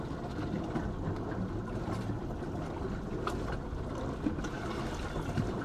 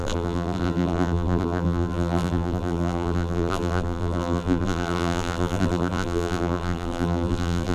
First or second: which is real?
first